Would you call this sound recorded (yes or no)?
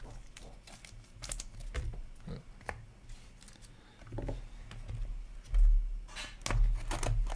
yes